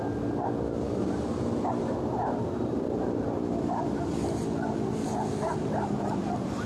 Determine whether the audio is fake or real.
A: real